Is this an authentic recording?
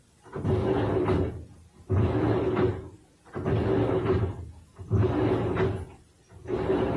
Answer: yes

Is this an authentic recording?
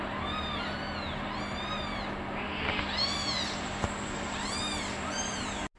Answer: yes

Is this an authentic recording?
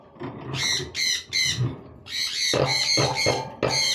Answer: yes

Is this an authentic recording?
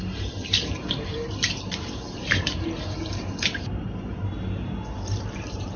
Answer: no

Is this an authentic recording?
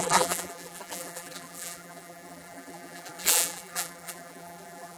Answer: no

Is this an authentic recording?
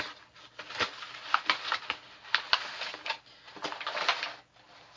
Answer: yes